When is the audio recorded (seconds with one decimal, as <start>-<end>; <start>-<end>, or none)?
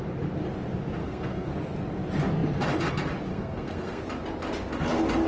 0.0-1.0; 1.5-3.3; 4.0-5.3